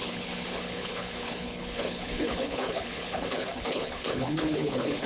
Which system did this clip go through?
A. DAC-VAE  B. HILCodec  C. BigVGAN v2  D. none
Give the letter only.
B